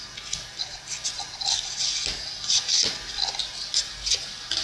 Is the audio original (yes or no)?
yes